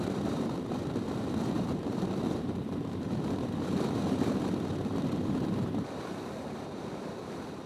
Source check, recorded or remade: remade